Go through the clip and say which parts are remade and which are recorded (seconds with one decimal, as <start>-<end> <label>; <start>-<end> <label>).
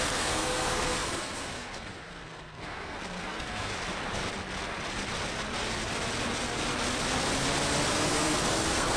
0.0-3.7 remade; 3.7-7.9 recorded; 7.9-9.0 remade